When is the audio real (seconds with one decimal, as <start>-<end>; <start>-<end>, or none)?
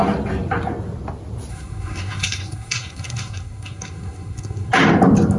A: 0.0-1.5; 4.7-5.4